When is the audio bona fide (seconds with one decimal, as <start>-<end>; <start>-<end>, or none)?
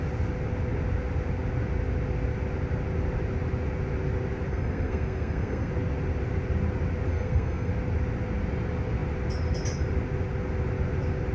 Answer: 0.0-4.5; 5.7-7.1; 7.7-11.3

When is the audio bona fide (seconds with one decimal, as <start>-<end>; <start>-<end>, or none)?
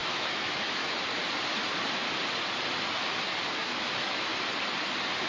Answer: 1.0-3.6; 4.3-5.3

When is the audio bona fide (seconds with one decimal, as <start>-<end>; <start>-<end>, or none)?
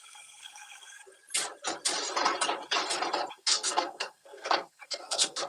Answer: 1.0-3.3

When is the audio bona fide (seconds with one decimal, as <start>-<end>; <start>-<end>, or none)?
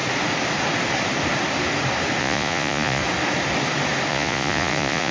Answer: 0.0-2.2; 3.0-4.1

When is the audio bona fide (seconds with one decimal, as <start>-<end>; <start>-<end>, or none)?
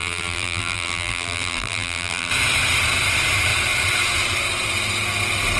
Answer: 2.3-5.6